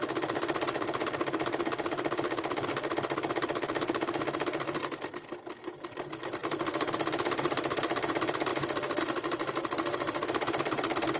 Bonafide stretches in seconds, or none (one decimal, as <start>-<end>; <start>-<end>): 0.0-11.2